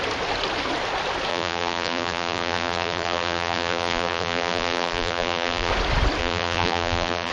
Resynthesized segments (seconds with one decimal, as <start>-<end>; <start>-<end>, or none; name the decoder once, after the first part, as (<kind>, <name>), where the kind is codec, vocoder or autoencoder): 1.3-5.7 (vocoder, BigVGAN v2); 6.2-7.3